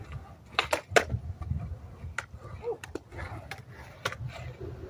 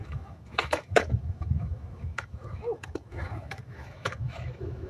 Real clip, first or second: first